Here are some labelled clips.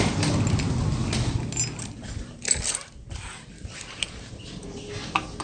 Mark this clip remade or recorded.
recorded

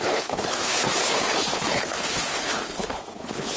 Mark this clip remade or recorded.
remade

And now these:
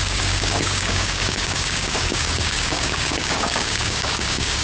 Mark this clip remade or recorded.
remade